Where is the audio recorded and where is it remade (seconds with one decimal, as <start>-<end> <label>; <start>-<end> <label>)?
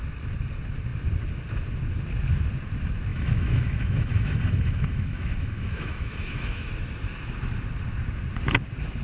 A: 0.0-3.1 recorded; 3.1-6.7 remade; 6.7-9.0 recorded